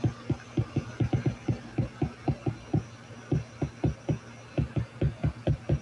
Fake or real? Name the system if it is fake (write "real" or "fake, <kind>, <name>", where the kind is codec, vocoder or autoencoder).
real